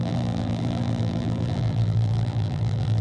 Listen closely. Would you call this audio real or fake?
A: fake